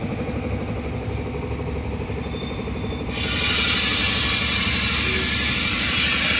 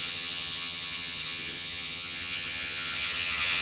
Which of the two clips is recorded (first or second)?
first